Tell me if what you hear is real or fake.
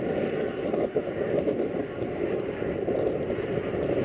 real